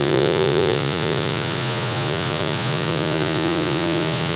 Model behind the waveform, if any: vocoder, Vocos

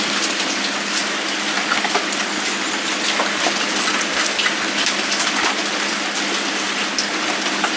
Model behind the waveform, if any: none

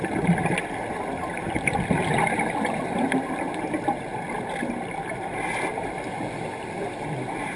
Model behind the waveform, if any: none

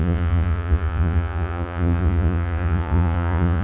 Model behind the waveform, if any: vocoder, Vocos